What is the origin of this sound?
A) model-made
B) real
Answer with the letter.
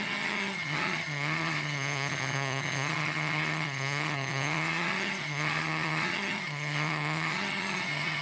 A